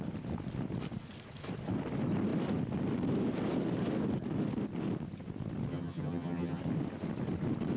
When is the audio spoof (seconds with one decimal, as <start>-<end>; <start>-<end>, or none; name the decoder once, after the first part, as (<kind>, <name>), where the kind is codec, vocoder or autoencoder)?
5.7-6.6 (vocoder, HiFi-GAN)